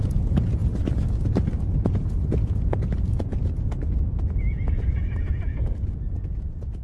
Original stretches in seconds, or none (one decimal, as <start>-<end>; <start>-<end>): 0.6-2.3